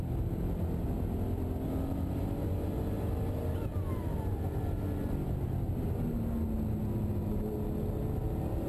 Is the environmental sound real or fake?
real